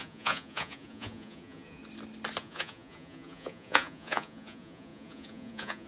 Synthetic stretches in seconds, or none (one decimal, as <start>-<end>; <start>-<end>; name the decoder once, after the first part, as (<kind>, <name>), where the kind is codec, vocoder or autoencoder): 0.0-1.8 (vocoder, Vocos); 2.4-5.9